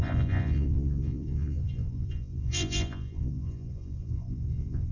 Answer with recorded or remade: remade